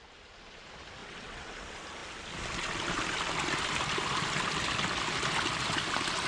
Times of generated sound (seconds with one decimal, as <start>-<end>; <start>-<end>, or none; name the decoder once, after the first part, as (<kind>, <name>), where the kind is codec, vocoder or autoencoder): 1.0-1.5 (vocoder, WaveNeXt)